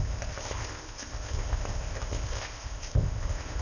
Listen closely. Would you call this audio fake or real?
fake